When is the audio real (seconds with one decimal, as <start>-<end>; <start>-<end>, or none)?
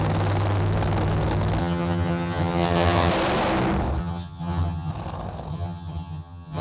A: 0.0-1.6; 3.1-4.0; 4.9-5.5